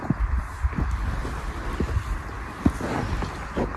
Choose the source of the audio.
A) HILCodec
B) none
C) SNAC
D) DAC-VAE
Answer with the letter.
B